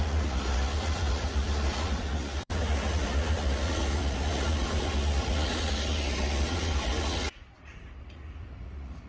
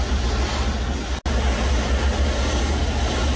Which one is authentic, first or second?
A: second